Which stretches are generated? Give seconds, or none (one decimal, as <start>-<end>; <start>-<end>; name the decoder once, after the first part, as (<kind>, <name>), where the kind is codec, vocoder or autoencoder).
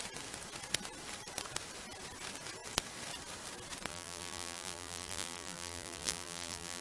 3.9-6.8 (vocoder, BigVGAN v2)